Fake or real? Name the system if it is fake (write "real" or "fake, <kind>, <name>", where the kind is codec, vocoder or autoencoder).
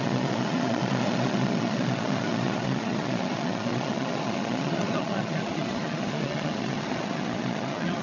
fake, vocoder, Vocos